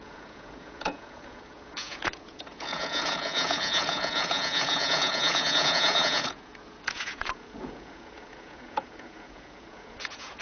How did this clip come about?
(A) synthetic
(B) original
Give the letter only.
A